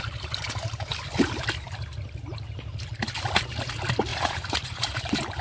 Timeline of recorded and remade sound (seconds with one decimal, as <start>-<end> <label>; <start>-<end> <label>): 0.0-4.1 recorded; 4.1-5.0 remade; 5.0-5.4 recorded